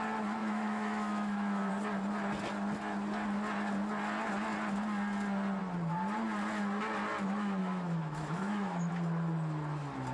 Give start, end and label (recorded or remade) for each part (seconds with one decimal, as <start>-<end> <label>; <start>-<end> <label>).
0.0-0.4 recorded; 0.4-1.7 remade; 1.7-7.6 recorded; 7.6-8.9 remade; 8.9-10.1 recorded